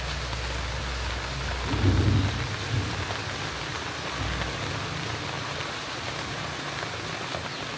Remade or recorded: recorded